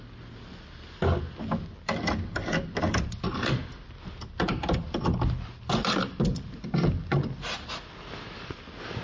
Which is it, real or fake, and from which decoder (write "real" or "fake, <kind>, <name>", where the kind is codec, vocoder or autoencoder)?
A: real